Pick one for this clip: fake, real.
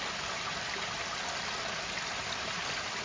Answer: real